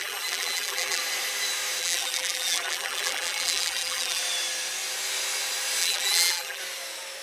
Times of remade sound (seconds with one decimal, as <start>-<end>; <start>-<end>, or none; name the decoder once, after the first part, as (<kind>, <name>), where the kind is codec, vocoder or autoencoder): 0.0-1.0 (vocoder, BigVGAN v2); 1.8-4.2; 5.8-6.6